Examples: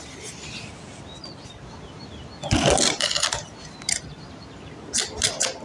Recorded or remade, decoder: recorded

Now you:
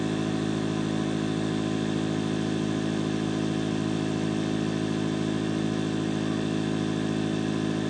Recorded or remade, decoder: recorded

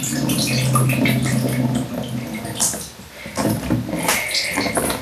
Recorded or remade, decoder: recorded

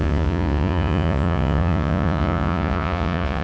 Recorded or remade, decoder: remade, vocoder, Vocos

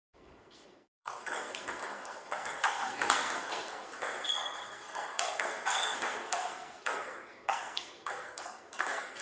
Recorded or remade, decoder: remade, codec, SNAC